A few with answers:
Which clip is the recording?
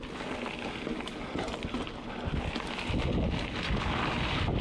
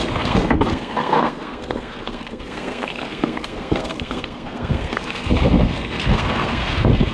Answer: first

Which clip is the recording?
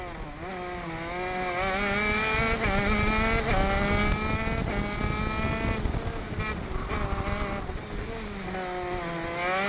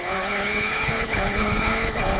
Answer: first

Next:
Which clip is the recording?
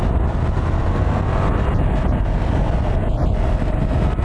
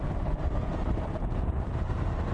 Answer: first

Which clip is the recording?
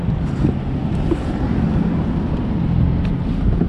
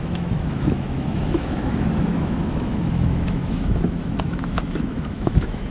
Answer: first